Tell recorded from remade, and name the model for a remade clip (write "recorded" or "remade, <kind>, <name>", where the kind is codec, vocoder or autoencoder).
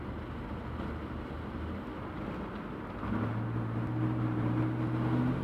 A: recorded